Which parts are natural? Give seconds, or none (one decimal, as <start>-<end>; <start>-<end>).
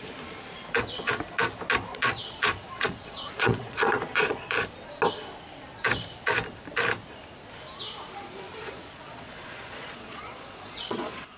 0.0-1.9; 4.5-8.6